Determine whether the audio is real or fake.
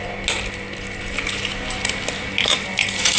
real